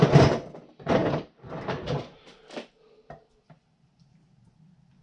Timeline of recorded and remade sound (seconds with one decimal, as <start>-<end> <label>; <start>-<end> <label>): 0.0-5.0 recorded